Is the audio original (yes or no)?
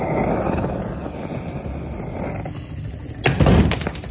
yes